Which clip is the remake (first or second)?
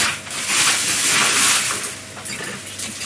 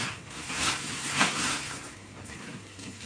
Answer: second